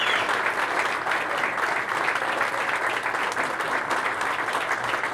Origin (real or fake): real